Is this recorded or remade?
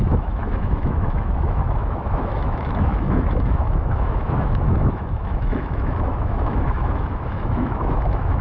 remade